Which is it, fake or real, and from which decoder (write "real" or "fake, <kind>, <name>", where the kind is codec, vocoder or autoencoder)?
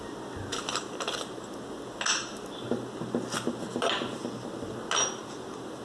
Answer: real